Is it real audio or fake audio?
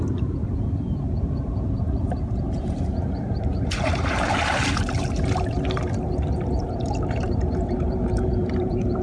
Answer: fake